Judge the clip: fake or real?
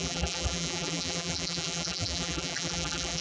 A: fake